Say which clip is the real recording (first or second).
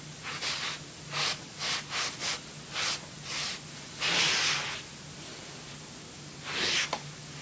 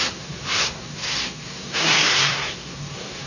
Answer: first